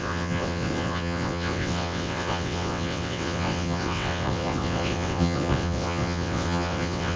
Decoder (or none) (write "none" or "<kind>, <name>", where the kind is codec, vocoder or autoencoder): vocoder, WaveNeXt